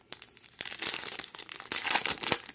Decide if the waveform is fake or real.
real